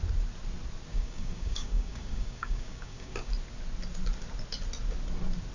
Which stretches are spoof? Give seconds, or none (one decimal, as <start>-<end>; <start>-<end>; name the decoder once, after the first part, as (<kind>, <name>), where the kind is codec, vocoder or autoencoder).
0.9-3.3 (codec, DAC)